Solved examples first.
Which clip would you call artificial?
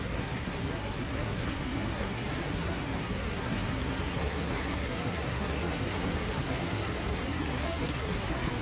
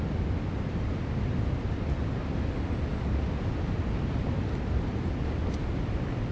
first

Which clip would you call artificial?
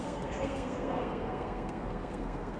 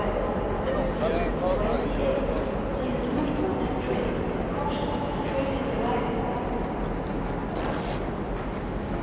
first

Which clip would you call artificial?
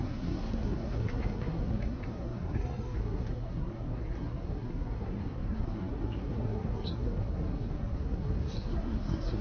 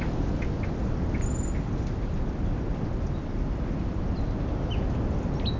first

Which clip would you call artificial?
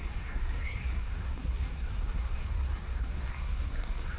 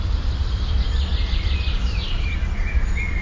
first